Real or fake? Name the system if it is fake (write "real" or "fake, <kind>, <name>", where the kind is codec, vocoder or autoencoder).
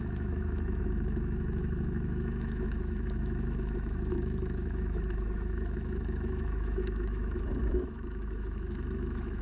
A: fake, autoencoder, DAC-VAE